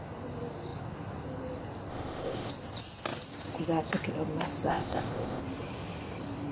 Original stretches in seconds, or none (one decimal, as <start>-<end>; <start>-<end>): 0.0-1.9; 2.5-4.7; 5.4-6.5